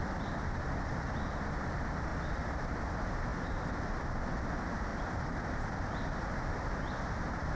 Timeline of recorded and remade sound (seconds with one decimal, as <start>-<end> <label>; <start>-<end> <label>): 0.0-0.9 remade; 0.9-2.1 recorded; 2.1-2.7 remade; 2.7-4.9 recorded; 4.9-6.7 remade; 6.7-7.5 recorded